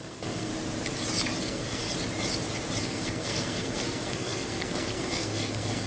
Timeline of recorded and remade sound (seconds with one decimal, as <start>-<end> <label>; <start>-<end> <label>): 0.0-0.5 remade; 0.5-1.4 recorded; 1.4-1.8 remade; 1.8-2.8 recorded; 2.8-5.9 remade